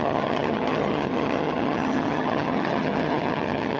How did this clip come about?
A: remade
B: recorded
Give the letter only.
A